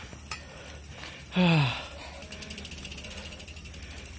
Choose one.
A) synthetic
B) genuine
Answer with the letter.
B